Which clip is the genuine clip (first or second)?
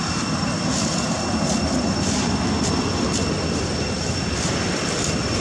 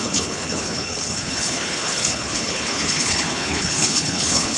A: first